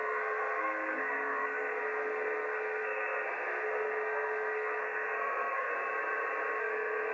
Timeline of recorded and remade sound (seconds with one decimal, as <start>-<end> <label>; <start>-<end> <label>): 0.0-5.7 remade; 5.7-6.6 recorded; 6.6-7.1 remade